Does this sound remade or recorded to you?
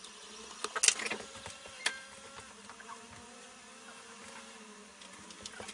recorded